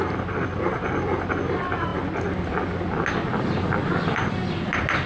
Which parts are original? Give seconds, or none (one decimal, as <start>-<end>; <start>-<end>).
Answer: 0.0-5.1